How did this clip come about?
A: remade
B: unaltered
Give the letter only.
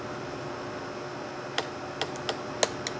B